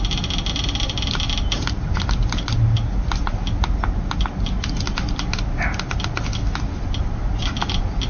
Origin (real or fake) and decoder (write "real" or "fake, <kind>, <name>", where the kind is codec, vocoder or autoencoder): real